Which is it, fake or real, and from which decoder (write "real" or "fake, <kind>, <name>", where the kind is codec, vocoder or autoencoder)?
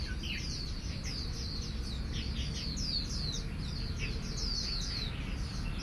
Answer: real